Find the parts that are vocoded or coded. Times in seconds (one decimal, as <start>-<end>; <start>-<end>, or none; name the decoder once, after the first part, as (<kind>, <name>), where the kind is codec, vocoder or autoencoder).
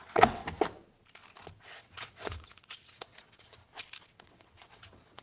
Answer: 0.0-0.4 (vocoder, WaveNeXt); 1.8-3.6; 4.2-5.2